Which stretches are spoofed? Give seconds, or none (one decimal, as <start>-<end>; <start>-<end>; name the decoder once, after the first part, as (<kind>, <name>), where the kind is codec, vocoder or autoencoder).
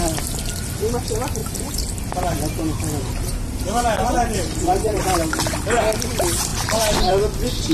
1.4-2.0 (vocoder, BigVGAN v2); 3.1-5.0